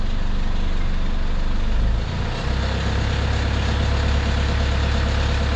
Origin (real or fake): real